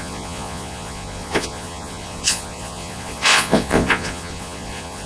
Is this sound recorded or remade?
remade